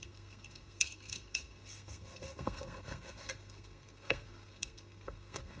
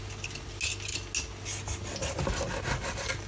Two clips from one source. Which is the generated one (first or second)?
first